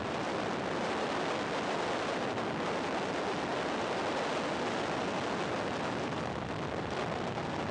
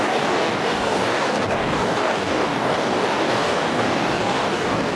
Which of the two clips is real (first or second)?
first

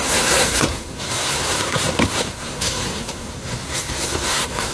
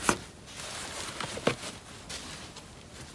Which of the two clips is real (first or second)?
second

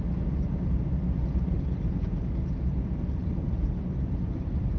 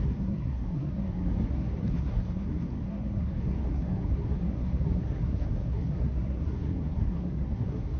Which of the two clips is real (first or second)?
first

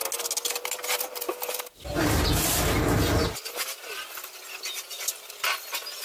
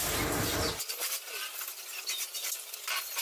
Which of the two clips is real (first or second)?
first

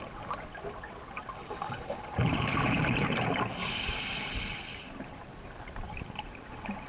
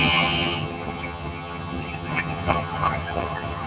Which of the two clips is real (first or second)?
first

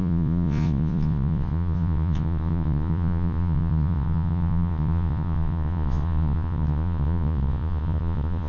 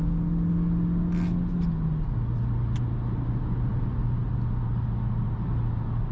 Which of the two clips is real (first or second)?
second